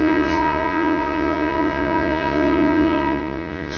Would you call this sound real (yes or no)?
no